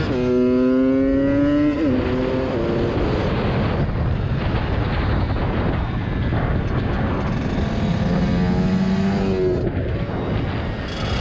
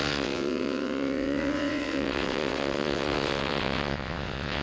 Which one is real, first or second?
first